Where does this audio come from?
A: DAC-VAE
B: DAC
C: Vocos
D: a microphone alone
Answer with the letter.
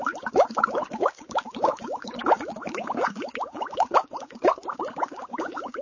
B